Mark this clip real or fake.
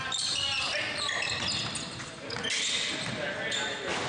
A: real